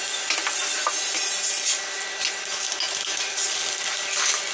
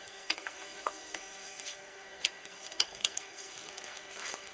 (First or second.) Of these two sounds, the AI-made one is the second